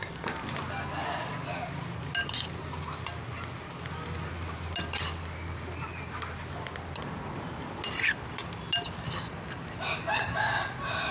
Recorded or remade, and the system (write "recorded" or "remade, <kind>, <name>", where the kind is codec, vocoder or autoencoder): recorded